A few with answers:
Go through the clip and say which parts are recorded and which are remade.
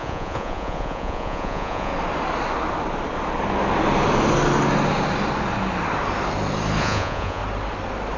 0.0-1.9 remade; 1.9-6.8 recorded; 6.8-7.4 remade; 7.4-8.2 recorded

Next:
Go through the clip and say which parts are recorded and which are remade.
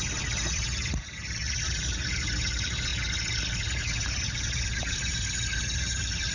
0.0-2.9 remade; 2.9-3.5 recorded; 3.5-6.3 remade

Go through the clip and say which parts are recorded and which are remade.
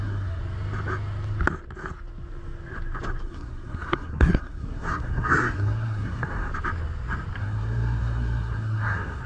0.0-0.4 remade; 0.4-3.2 recorded; 3.2-6.5 remade; 6.5-7.4 recorded; 7.4-9.3 remade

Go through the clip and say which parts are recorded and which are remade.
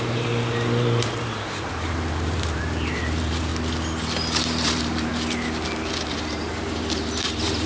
0.0-3.5 remade; 3.5-4.4 recorded; 4.4-5.1 remade; 5.1-5.9 recorded; 5.9-7.7 remade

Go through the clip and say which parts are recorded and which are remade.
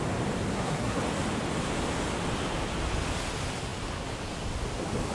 0.0-0.5 recorded; 0.5-1.0 remade; 1.0-5.1 recorded